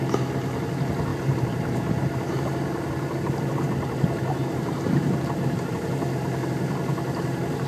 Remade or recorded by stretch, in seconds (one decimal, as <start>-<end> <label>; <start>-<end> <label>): 0.0-1.1 recorded; 1.1-5.7 remade; 5.7-7.7 recorded